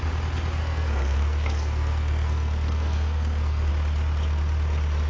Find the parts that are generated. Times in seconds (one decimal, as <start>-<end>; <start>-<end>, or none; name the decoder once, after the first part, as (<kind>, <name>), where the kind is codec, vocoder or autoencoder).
0.6-3.7 (codec, SNAC)